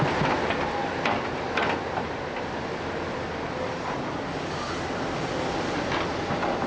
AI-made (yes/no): no